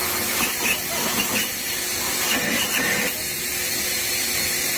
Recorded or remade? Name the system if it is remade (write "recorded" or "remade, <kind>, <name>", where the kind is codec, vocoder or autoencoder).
recorded